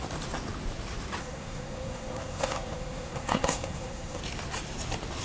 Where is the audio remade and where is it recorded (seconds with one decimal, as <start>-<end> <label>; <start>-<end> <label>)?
0.0-1.2 recorded; 1.2-4.2 remade; 4.2-5.2 recorded